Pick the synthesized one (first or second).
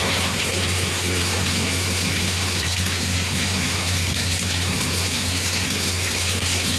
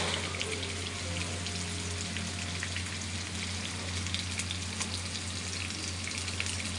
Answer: first